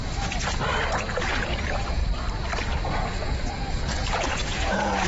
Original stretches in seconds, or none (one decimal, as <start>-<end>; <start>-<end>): 0.0-1.3; 2.0-2.9